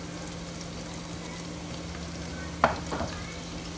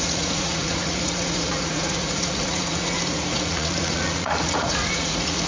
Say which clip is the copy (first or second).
second